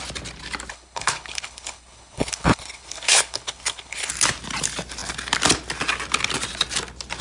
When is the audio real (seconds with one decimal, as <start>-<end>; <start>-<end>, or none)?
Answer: 0.0-0.7; 4.1-7.2